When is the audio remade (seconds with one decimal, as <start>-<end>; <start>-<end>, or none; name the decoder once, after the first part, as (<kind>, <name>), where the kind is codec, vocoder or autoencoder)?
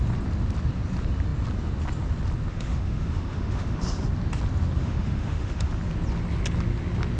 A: 2.5-3.8 (autoencoder, DAC-VAE); 4.8-5.7